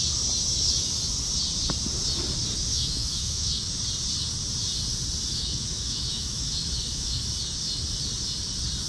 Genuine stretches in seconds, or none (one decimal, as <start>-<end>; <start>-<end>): 0.0-2.7; 3.7-5.3; 7.2-8.9